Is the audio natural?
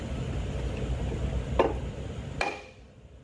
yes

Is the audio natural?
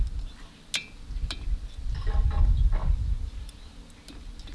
yes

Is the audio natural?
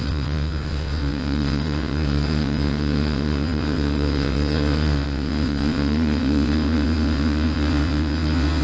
no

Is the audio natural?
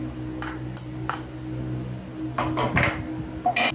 yes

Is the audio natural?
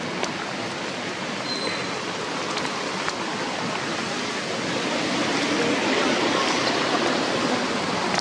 yes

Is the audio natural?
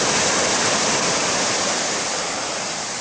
yes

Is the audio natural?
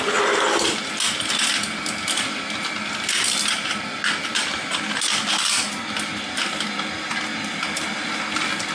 yes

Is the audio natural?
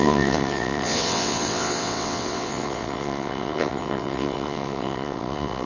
no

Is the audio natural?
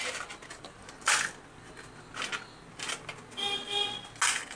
yes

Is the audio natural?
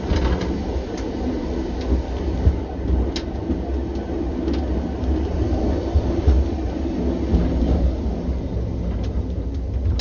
yes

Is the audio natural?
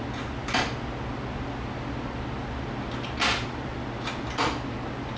yes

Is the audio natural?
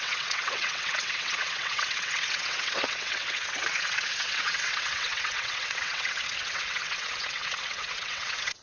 no